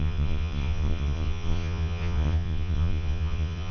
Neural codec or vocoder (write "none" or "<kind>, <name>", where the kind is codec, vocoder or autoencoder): vocoder, Vocos